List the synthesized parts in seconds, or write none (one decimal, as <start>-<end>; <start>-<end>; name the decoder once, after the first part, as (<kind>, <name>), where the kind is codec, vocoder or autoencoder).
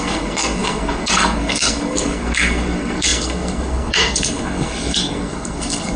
0.0-6.0 (codec, SNAC)